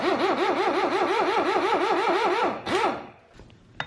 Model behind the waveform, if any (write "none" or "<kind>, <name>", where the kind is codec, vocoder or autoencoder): none